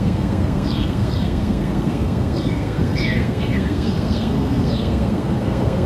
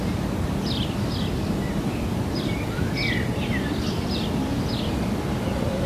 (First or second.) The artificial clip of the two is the first